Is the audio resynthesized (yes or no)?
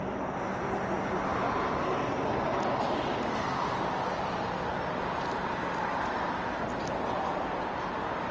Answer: no